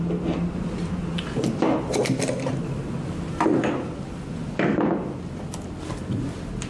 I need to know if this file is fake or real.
real